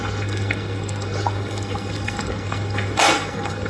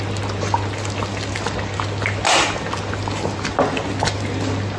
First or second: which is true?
second